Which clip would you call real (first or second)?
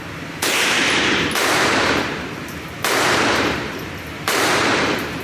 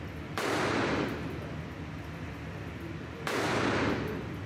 second